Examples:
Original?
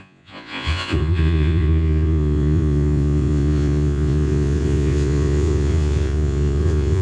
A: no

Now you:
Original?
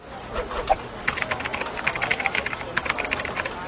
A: yes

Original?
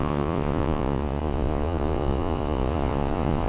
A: no